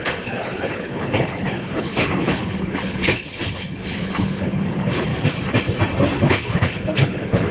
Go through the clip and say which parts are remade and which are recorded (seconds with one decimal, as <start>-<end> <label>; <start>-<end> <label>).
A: 0.0-5.1 remade; 5.1-6.2 recorded; 6.2-7.5 remade